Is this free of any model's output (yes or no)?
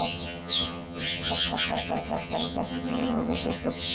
no